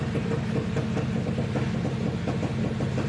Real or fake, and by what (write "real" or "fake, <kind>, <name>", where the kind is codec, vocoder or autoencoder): real